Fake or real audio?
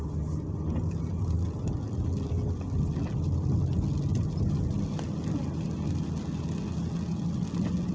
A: real